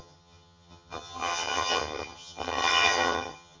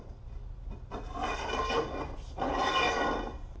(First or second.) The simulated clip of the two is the first